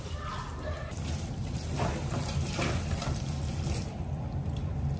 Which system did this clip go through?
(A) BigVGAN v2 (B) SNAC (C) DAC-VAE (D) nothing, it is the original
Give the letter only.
D